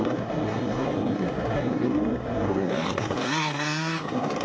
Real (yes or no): no